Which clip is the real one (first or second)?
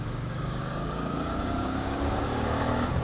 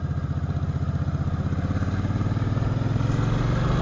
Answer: second